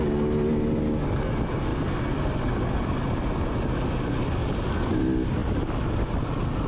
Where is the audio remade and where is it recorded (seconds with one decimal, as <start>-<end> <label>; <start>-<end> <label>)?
0.0-1.7 recorded; 1.7-2.9 remade; 2.9-4.4 recorded; 4.4-5.0 remade; 5.0-5.4 recorded; 5.4-6.2 remade; 6.2-6.7 recorded